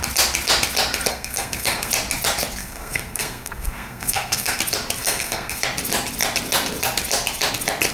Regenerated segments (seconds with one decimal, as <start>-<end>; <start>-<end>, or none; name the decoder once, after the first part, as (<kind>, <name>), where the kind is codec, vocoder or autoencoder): 1.1-1.9 (codec, SNAC); 2.6-4.6; 5.0-5.6